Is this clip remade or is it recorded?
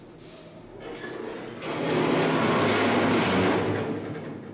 recorded